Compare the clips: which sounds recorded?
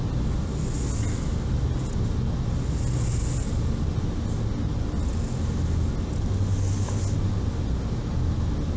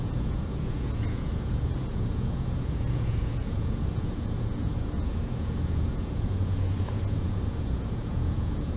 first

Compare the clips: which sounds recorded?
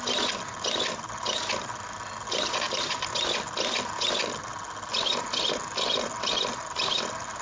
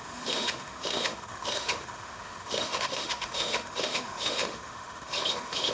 first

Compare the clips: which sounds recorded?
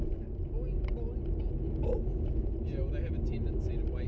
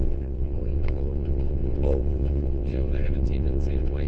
first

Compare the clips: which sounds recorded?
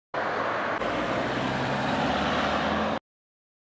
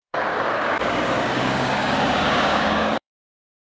first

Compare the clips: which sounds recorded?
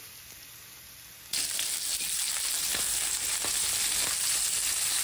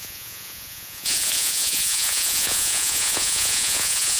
first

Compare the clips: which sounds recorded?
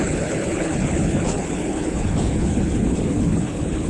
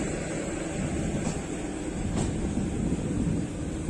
second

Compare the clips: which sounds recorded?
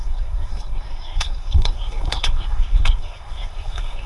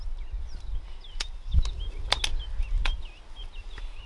second